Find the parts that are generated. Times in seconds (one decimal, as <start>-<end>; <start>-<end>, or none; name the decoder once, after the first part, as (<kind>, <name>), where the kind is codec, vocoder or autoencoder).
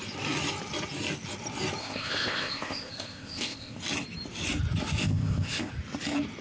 1.8-3.8 (codec, ZipCodec); 5.0-5.7